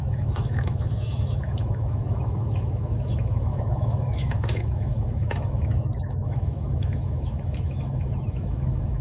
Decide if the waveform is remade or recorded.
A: remade